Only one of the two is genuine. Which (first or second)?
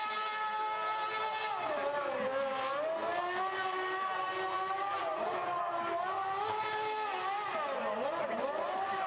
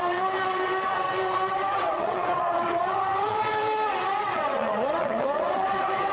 first